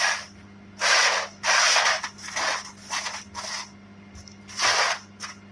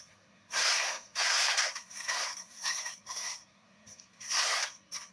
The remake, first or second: second